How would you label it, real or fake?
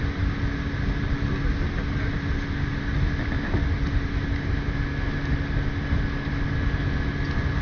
real